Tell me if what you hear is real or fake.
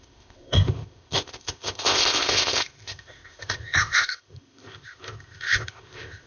fake